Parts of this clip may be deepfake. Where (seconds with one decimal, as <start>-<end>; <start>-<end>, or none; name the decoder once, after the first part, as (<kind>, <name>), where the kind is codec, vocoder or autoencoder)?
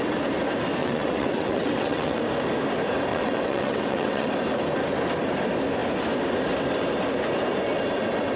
0.8-2.2 (vocoder, WaveNeXt); 3.1-4.3